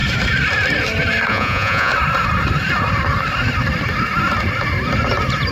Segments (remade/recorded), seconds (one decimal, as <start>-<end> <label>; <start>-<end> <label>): 0.0-1.3 recorded; 1.3-1.9 remade; 1.9-5.5 recorded